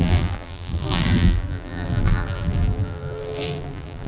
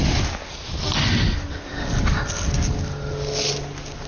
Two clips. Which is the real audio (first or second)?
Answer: second